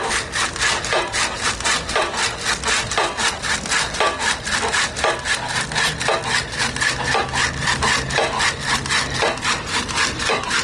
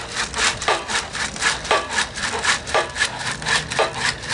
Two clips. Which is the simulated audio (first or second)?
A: second